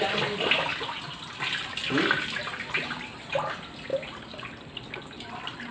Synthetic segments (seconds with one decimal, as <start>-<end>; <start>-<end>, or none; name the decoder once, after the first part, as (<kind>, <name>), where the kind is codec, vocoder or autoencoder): 3.9-5.3 (vocoder, BigVGAN v2)